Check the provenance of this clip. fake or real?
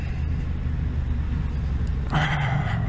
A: real